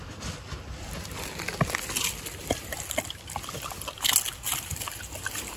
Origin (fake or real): real